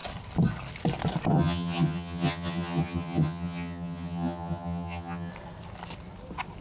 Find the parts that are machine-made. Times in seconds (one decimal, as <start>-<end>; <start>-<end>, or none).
1.3-5.3